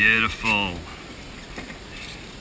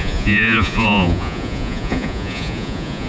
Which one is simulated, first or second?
second